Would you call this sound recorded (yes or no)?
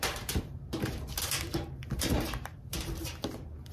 no